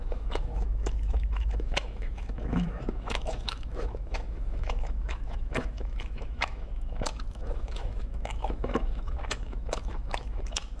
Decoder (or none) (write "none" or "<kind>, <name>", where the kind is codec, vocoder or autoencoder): autoencoder, DAC-VAE